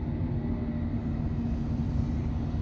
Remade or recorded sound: recorded